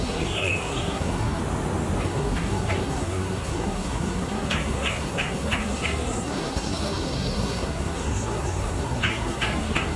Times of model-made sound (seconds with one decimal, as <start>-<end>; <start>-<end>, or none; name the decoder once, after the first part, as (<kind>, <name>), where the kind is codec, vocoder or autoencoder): 0.0-1.4 (codec, SNAC); 2.0-10.0